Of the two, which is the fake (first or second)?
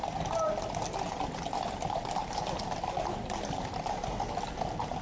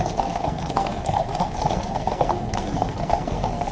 second